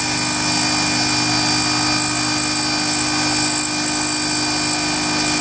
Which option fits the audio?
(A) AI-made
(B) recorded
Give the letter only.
B